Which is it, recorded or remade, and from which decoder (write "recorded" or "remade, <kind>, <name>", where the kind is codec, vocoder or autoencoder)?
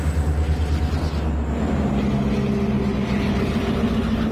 recorded